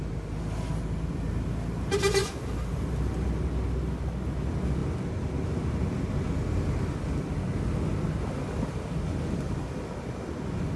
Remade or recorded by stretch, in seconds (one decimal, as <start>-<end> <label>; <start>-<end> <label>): 0.0-2.2 recorded; 2.2-2.8 remade; 2.8-10.8 recorded